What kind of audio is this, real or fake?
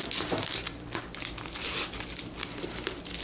real